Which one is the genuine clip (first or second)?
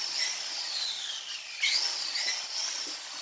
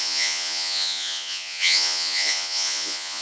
first